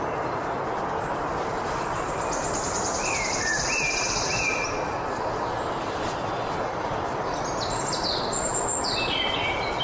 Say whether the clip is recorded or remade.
recorded